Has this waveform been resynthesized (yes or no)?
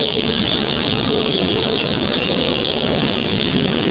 yes